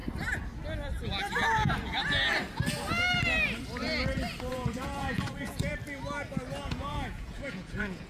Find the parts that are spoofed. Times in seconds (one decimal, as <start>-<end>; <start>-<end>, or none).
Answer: 4.5-5.7; 6.6-8.1

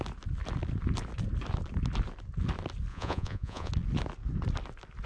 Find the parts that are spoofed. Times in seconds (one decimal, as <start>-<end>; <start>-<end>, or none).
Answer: 2.9-3.7